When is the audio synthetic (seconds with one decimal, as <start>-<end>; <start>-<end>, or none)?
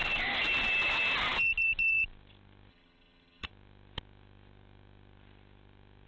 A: 2.7-3.5